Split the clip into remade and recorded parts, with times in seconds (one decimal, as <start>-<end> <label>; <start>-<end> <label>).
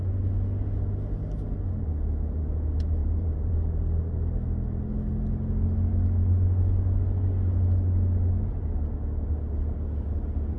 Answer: 0.0-3.0 recorded; 3.0-3.6 remade; 3.6-10.6 recorded